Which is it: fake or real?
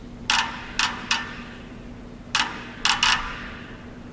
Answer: real